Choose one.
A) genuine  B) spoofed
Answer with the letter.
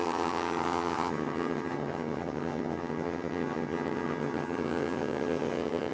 B